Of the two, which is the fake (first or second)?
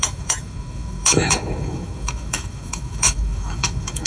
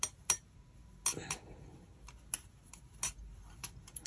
first